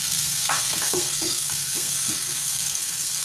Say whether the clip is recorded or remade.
remade